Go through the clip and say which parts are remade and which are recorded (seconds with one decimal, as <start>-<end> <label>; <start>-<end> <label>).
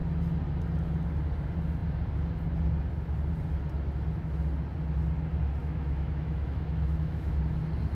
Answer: 0.0-5.6 recorded; 5.6-7.3 remade; 7.3-7.9 recorded